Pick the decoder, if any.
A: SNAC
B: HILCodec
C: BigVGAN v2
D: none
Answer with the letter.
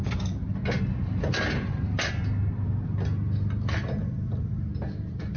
D